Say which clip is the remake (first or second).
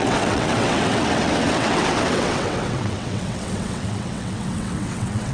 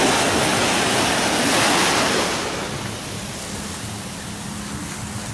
first